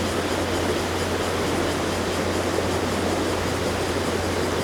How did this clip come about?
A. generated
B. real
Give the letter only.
B